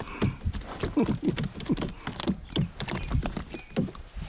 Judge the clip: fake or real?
real